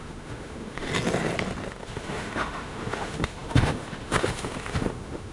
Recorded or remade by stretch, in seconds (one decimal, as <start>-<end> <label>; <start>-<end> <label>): 0.0-0.9 remade; 0.9-1.7 recorded; 1.7-5.3 remade